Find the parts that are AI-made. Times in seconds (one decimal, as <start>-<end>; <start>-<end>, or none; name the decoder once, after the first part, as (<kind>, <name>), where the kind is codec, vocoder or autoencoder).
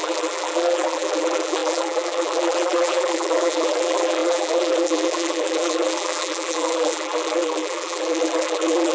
0.0-8.9 (vocoder, BigVGAN v2)